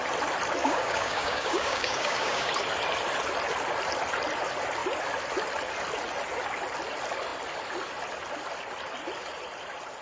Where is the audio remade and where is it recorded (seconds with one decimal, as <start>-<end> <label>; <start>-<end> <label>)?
0.0-0.6 recorded; 0.6-2.5 remade; 2.5-10.0 recorded